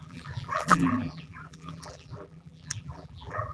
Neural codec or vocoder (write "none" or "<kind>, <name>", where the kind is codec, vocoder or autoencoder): vocoder, BigVGAN v2